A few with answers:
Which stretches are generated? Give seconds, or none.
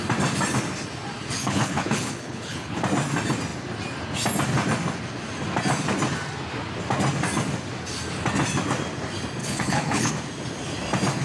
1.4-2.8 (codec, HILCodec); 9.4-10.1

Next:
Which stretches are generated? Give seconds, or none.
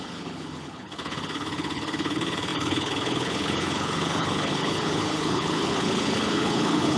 0.0-7.0 (codec, HILCodec)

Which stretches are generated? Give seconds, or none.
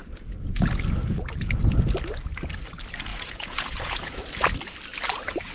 3.1-4.2 (vocoder, Vocos)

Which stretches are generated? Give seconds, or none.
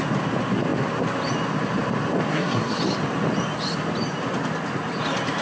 2.3-2.8 (codec, SNAC)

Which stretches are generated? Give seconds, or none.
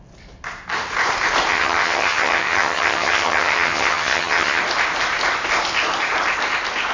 1.5-4.6 (vocoder, HiFi-GAN)